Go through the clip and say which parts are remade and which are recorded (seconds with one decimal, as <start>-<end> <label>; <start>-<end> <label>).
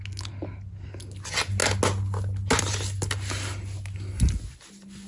0.0-5.1 recorded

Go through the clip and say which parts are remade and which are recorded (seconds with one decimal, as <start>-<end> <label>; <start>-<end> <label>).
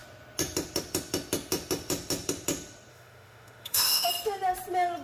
0.0-2.9 recorded; 2.9-4.1 remade; 4.1-5.0 recorded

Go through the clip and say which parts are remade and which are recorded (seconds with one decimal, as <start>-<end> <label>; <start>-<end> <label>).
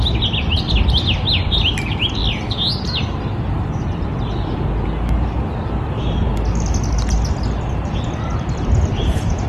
0.0-9.5 recorded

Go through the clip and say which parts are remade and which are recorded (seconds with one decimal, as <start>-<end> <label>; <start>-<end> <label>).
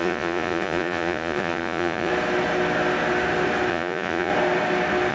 0.0-2.1 remade; 2.1-3.7 recorded; 3.7-4.3 remade; 4.3-5.1 recorded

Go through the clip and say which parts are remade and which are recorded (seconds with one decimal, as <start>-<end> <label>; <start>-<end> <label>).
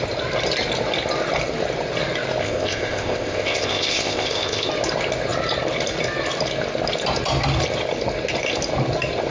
0.0-2.4 recorded; 2.4-4.7 remade; 4.7-9.3 recorded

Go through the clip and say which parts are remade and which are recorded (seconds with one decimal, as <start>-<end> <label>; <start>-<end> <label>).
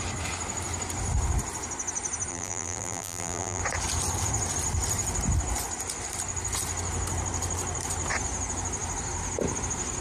0.0-2.3 recorded; 2.3-3.6 remade; 3.6-10.0 recorded